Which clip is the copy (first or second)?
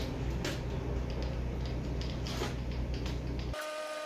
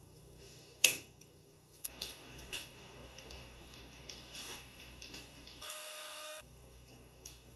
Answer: second